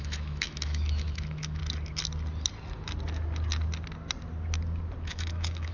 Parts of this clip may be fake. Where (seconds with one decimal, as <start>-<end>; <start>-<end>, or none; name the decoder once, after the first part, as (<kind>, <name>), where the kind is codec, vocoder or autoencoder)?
0.0-1.6 (autoencoder, DAC-VAE); 5.0-5.7